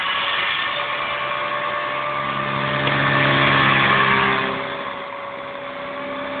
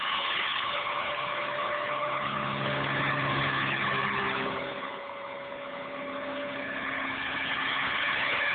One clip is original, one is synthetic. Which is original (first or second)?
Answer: first